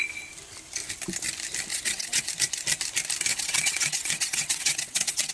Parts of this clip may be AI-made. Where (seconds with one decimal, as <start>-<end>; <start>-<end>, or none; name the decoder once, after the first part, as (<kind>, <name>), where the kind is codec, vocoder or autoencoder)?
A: 1.7-2.3 (vocoder, WaveNeXt); 3.3-5.3